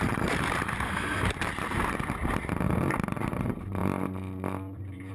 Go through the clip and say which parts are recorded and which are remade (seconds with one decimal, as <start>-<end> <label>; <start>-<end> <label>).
0.0-2.2 remade; 2.2-2.9 recorded; 2.9-3.8 remade; 3.8-5.1 recorded